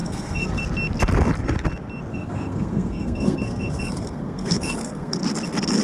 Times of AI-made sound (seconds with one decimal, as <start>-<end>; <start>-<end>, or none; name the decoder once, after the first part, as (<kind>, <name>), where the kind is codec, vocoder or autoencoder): 0.0-0.6 (codec, SNAC); 2.1-5.2